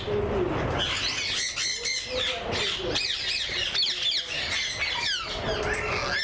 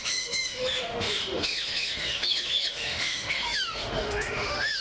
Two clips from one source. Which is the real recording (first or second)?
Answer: first